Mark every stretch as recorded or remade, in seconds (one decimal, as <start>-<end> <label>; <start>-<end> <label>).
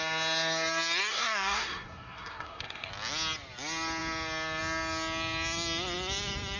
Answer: 0.0-1.1 recorded; 1.1-2.9 remade; 2.9-6.6 recorded